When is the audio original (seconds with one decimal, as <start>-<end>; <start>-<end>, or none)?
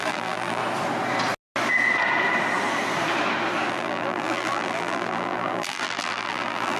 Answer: 0.6-3.7